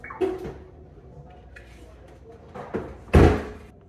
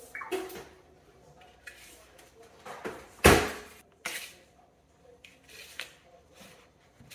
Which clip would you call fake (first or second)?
second